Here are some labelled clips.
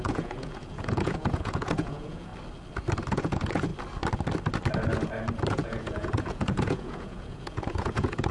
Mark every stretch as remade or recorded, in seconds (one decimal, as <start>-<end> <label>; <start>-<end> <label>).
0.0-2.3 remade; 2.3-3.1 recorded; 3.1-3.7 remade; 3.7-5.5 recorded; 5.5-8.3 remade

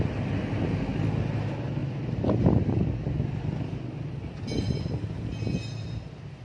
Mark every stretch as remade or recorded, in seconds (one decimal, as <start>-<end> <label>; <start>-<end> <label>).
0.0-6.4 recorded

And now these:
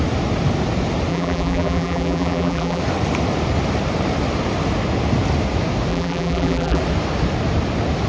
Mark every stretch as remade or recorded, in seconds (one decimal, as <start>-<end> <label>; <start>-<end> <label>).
0.0-1.1 recorded; 1.1-2.8 remade; 2.8-5.9 recorded; 5.9-6.8 remade; 6.8-8.1 recorded

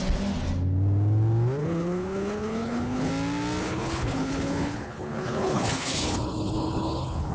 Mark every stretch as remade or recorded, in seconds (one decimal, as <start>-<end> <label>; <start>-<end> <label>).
0.0-1.6 recorded; 1.6-3.1 remade; 3.1-3.6 recorded; 3.6-7.3 remade

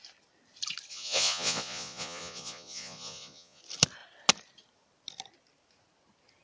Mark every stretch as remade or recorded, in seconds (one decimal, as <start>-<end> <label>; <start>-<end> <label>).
0.0-0.9 recorded; 0.9-3.6 remade; 3.6-6.4 recorded

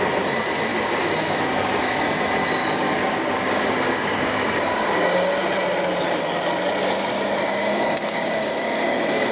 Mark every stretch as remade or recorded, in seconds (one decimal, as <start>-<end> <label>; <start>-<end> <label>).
0.0-0.7 recorded; 0.7-2.0 remade; 2.0-2.6 recorded; 2.6-5.4 remade; 5.4-6.8 recorded; 6.8-9.3 remade